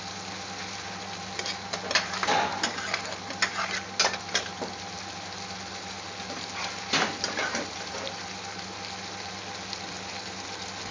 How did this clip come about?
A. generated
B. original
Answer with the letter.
B